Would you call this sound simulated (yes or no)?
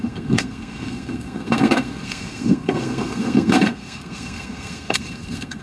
yes